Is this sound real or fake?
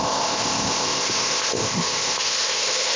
fake